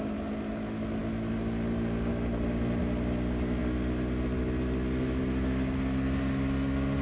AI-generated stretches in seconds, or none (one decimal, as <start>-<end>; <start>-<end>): none